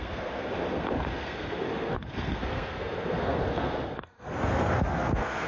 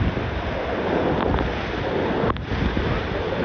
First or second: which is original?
second